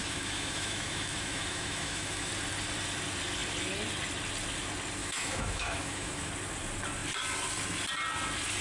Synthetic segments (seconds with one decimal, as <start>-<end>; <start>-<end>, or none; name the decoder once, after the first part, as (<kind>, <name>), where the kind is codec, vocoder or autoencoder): 0.0-2.3 (autoencoder, DAC-VAE); 5.0-6.3